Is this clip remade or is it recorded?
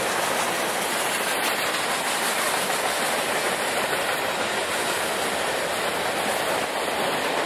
recorded